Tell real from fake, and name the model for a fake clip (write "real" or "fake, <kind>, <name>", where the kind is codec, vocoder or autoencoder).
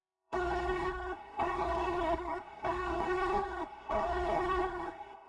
fake, codec, SNAC